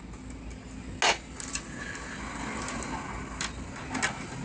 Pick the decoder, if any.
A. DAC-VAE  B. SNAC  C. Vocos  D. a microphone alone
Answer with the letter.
D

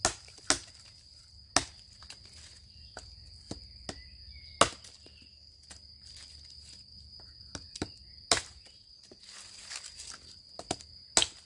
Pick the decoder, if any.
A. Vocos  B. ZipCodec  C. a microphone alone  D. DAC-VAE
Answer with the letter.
C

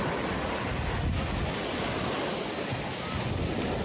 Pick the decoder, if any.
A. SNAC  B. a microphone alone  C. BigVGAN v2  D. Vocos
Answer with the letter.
B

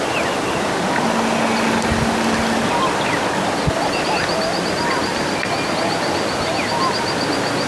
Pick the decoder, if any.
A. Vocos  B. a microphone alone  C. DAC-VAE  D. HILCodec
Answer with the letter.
B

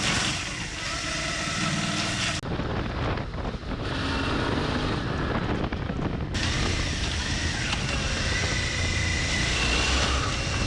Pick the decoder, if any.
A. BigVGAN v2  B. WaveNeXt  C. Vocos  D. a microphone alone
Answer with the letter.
D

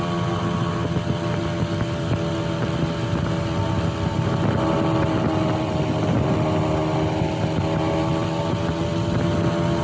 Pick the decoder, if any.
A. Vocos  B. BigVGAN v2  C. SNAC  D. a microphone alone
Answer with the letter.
D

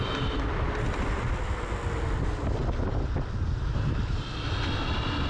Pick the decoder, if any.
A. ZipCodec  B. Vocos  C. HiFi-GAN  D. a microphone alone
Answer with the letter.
D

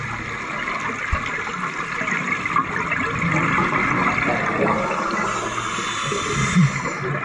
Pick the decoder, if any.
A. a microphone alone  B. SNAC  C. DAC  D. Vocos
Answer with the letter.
A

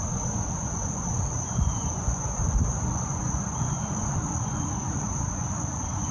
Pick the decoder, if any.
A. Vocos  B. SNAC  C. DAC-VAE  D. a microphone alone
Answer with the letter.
A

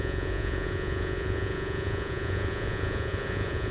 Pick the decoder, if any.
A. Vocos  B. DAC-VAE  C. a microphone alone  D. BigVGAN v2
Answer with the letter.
A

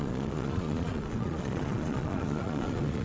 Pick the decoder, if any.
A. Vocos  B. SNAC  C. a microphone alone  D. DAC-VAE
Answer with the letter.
A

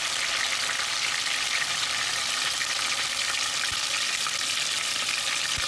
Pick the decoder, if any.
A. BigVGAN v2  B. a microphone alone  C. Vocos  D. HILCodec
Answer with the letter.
B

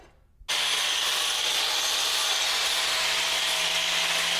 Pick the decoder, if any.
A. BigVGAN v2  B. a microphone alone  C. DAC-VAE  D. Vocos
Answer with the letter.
B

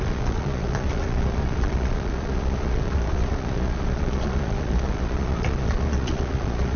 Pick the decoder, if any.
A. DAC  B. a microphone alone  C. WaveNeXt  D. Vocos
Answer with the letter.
D